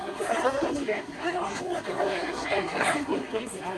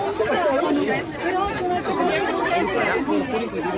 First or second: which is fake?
first